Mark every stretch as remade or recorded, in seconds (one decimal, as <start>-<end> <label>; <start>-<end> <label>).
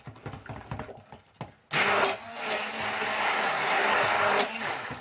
0.0-3.3 recorded; 3.3-3.9 remade; 3.9-5.0 recorded